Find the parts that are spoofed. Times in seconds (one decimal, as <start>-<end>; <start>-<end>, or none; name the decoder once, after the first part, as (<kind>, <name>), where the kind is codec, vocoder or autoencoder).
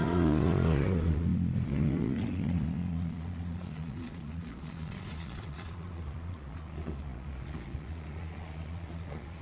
0.0-9.4 (vocoder, Vocos)